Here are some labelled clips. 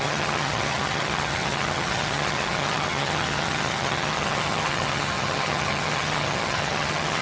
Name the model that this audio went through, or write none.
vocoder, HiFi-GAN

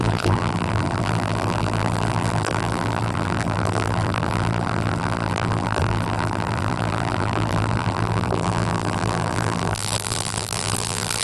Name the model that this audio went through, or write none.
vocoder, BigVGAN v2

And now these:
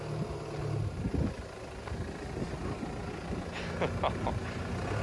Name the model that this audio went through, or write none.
none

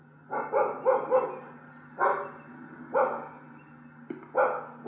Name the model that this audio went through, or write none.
none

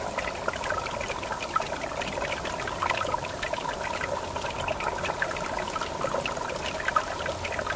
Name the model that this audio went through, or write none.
none